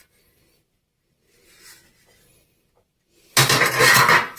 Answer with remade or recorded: recorded